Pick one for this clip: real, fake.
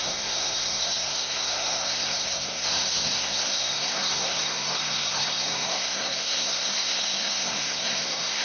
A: fake